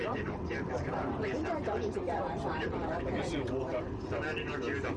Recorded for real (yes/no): no